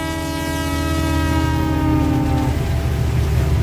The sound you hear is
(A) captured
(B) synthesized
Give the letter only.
A